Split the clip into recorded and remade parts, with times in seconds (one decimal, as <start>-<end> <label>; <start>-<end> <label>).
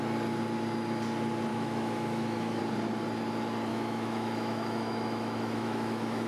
0.0-1.5 recorded; 1.5-2.6 remade; 2.6-3.7 recorded; 3.7-6.3 remade